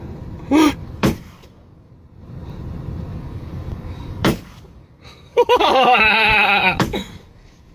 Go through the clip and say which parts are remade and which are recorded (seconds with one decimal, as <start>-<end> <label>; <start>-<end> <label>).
0.0-0.8 recorded; 0.8-1.9 remade; 1.9-3.1 recorded; 3.1-7.7 remade